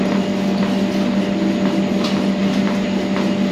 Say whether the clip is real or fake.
real